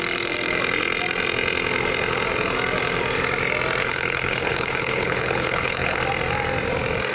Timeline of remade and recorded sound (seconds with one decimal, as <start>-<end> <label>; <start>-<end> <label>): 0.0-3.8 recorded; 3.8-6.0 remade; 6.0-7.1 recorded